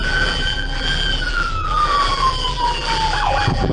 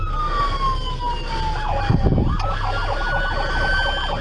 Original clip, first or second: second